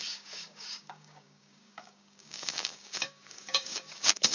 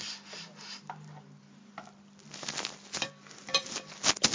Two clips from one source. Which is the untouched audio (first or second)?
second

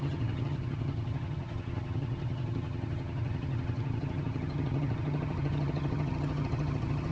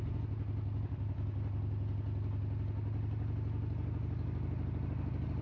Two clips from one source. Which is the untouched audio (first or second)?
second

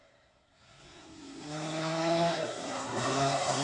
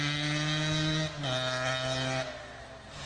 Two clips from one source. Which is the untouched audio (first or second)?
second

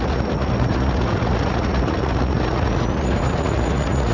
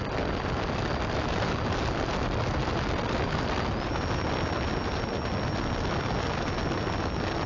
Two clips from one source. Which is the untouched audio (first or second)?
second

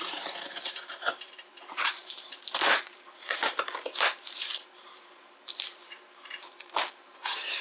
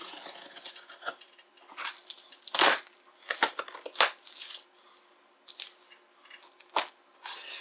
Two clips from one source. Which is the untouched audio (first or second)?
second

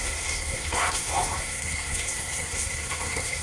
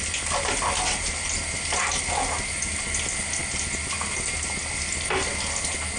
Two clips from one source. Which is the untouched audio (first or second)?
second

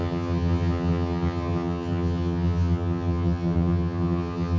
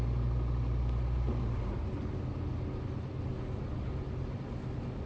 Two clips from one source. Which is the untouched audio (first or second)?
second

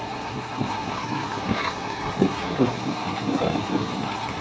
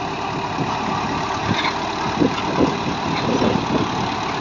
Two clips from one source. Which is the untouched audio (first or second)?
second